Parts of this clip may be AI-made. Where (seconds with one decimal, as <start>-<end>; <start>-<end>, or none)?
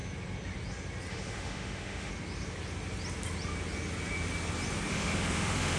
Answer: 1.1-2.1; 4.9-5.8